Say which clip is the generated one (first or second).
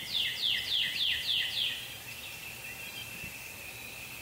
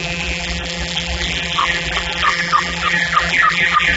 second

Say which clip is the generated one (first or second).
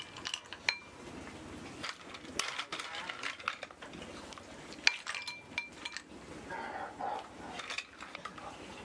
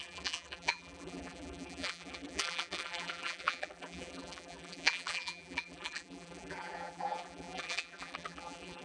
second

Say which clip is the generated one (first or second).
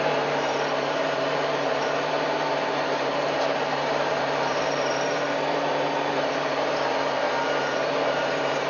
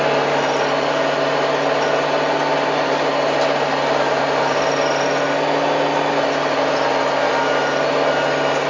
first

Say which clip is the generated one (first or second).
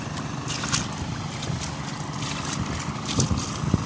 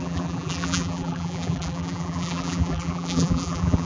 second